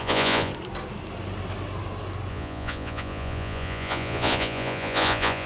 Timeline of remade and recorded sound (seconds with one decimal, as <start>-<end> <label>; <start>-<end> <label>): 0.0-0.5 remade; 0.5-2.3 recorded; 2.3-5.5 remade